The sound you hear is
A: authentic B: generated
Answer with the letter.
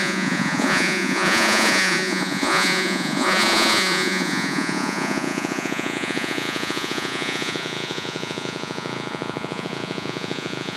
B